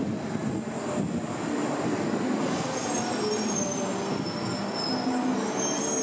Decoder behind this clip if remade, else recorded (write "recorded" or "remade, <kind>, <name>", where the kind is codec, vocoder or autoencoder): recorded